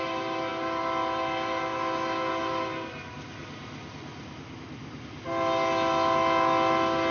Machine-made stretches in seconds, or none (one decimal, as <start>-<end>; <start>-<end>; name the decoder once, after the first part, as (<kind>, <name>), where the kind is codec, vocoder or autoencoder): none